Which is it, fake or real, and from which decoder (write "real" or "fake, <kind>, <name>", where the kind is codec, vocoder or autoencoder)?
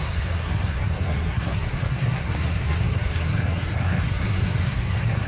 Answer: fake, codec, SNAC